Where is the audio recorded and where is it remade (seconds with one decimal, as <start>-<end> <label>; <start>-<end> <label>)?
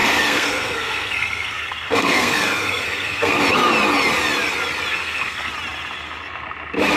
0.0-3.4 remade; 3.4-4.9 recorded; 4.9-5.5 remade; 5.5-7.0 recorded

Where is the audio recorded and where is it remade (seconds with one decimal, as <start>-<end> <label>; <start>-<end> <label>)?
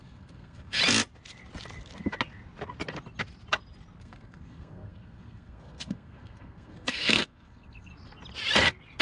0.0-0.8 remade; 0.8-4.0 recorded; 4.0-7.9 remade; 7.9-9.0 recorded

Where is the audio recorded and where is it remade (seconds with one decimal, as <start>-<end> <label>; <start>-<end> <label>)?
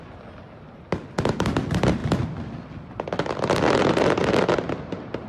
0.0-5.3 recorded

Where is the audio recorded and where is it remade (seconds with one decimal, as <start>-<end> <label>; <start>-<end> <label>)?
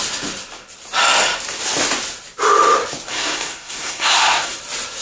0.0-3.1 recorded; 3.1-4.6 remade; 4.6-5.0 recorded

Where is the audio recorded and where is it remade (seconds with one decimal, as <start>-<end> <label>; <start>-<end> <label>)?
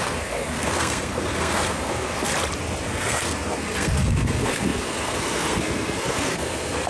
0.0-2.3 remade; 2.3-2.8 recorded; 2.8-6.9 remade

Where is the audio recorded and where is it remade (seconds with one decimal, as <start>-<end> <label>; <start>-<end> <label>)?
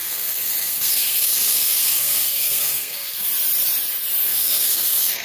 0.0-3.3 remade; 3.3-4.2 recorded; 4.2-5.2 remade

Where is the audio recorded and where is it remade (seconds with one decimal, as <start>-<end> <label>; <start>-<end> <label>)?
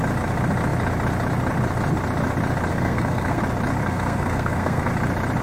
0.0-2.7 recorded; 2.7-3.4 remade; 3.4-3.8 recorded; 3.8-4.9 remade; 4.9-5.4 recorded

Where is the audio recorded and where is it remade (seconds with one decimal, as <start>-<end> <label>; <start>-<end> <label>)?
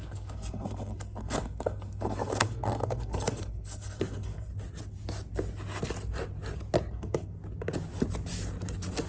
0.0-4.5 remade; 4.5-6.9 recorded; 6.9-7.4 remade; 7.4-9.1 recorded